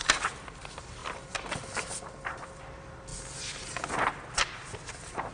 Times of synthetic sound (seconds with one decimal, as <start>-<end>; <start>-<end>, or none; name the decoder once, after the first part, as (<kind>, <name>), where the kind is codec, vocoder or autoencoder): 0.0-3.1 (vocoder, BigVGAN v2); 4.4-5.3